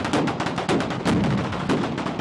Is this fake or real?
real